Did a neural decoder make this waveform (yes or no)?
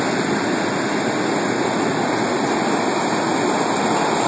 no